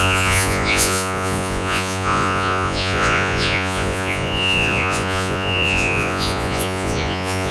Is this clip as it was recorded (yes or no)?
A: no